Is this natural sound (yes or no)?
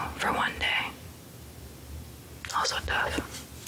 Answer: yes